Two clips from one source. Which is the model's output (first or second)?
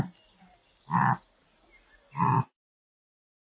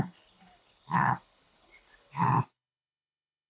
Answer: second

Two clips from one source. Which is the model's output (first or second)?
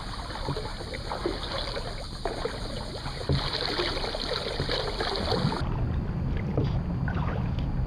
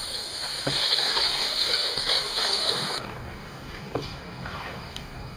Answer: second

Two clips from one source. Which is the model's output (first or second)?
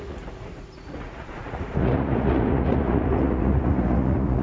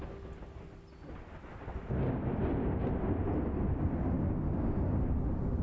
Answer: first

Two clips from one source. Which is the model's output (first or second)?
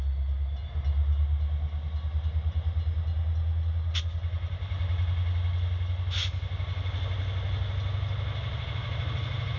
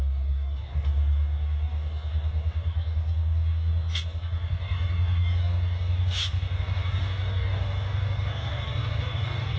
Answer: second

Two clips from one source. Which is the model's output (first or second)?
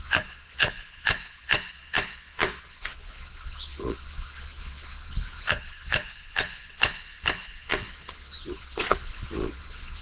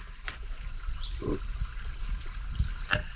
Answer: first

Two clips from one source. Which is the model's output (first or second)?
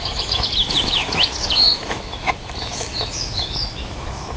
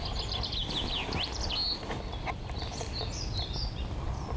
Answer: first